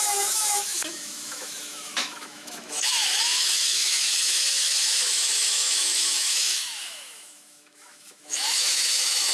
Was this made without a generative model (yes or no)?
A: no